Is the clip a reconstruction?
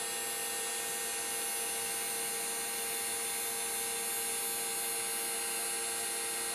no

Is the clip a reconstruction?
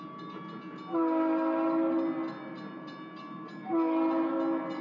no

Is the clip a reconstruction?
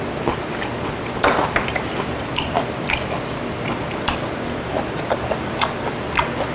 no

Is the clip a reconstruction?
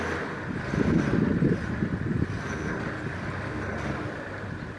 no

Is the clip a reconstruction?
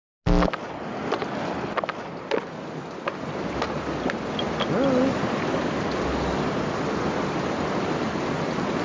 no